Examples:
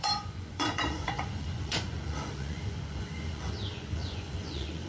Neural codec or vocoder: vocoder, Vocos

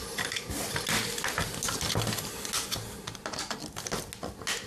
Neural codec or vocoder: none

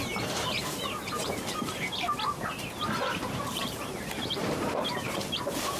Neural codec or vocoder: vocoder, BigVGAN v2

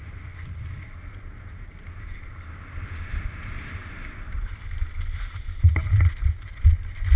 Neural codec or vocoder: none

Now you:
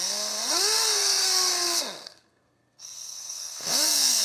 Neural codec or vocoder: codec, SNAC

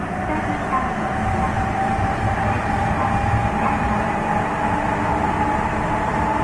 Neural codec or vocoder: none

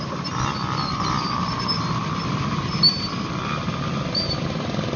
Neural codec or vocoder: none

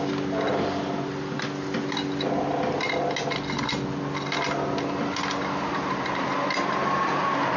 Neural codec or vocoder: none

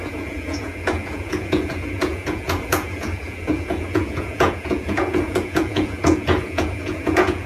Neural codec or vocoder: vocoder, Vocos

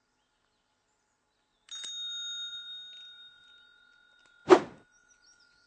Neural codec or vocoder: none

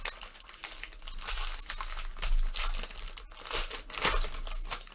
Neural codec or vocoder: none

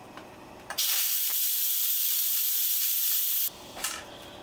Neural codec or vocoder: vocoder, BigVGAN v2